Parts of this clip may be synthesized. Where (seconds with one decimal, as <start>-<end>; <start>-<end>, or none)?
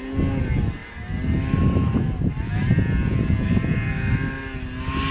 none